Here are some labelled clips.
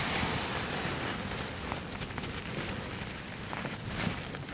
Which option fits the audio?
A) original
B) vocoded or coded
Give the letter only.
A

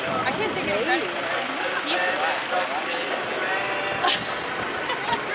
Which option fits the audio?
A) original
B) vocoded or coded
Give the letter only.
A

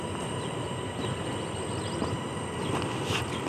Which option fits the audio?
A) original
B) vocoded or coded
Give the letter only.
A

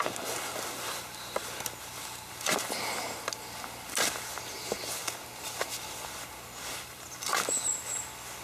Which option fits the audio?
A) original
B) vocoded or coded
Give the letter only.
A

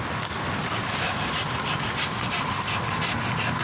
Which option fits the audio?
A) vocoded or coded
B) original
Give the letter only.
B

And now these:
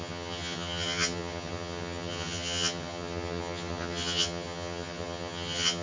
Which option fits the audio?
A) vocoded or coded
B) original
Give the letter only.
A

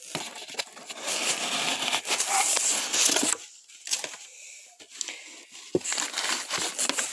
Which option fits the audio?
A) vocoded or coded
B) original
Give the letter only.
B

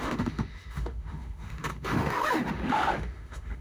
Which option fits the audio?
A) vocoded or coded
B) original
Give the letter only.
A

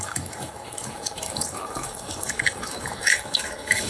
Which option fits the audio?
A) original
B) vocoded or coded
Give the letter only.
B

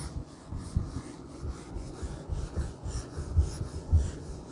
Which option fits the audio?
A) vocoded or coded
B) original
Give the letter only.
A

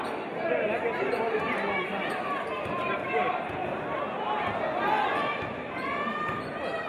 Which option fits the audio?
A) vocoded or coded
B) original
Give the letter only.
B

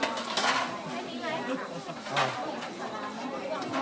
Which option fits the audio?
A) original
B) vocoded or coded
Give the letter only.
A